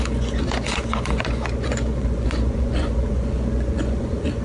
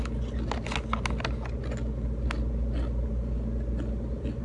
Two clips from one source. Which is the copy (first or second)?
first